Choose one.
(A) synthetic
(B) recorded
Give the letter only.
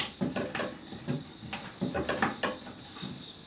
B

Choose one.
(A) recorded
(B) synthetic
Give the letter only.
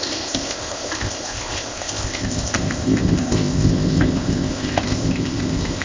B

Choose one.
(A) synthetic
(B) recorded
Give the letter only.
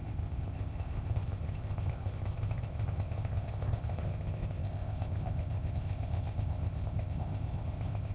A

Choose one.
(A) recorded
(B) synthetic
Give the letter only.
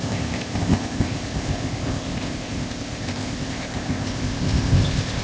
B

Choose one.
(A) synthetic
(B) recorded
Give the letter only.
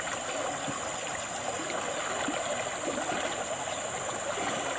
B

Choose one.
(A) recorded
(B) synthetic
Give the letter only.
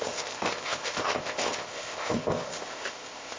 B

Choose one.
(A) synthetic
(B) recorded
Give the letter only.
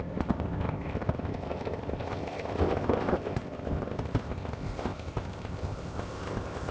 A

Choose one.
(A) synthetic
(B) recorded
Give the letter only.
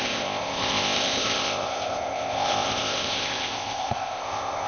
A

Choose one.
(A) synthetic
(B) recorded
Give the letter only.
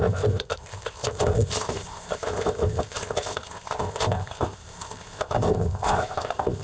A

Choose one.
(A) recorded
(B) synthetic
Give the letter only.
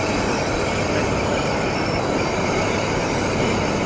A